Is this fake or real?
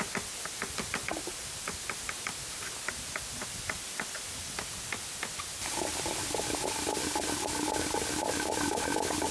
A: real